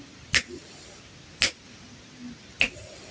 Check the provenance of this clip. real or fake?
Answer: real